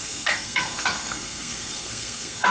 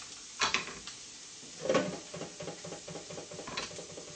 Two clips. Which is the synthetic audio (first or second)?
first